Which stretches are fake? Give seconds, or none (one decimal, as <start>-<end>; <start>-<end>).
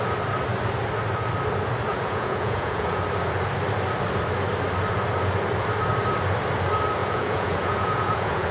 1.9-3.0; 7.0-8.5